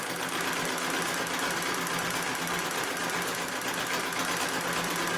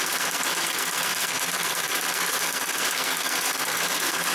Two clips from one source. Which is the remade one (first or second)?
second